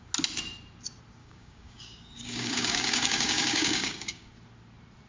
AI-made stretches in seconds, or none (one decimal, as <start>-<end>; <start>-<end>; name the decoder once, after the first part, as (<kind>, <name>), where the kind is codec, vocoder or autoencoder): 1.2-4.3 (codec, DAC)